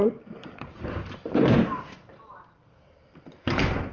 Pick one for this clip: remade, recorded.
remade